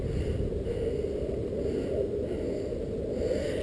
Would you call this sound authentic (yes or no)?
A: yes